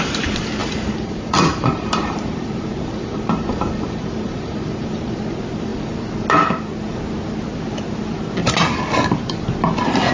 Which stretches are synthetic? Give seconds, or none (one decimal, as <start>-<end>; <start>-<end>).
0.6-5.2